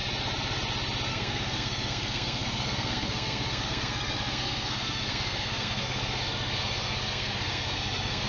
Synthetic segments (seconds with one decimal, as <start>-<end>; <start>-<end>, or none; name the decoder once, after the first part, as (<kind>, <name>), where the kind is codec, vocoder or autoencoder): 1.1-8.3 (codec, SNAC)